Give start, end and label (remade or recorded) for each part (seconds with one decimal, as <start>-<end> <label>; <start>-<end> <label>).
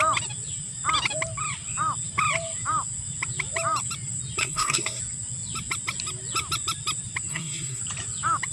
0.0-4.4 recorded; 4.4-5.0 remade; 5.0-7.3 recorded; 7.3-7.8 remade; 7.8-8.5 recorded